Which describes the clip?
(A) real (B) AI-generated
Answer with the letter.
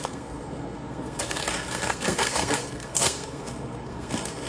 B